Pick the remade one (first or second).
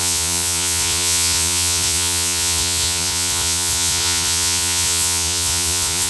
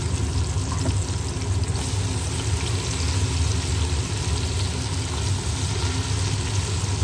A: first